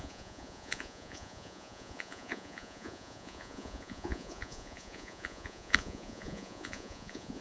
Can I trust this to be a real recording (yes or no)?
no